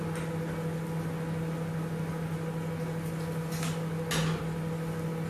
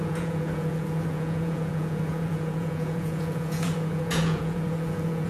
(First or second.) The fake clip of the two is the second